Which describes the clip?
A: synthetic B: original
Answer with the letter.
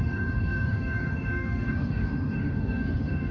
A